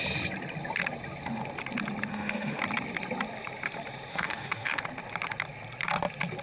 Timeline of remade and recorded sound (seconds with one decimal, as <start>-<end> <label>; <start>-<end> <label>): 0.0-2.1 recorded; 2.1-2.6 remade; 2.6-4.1 recorded; 4.1-4.8 remade; 4.8-6.4 recorded